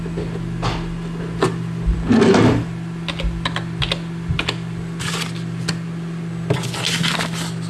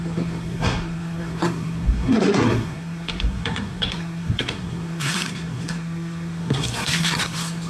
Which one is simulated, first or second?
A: second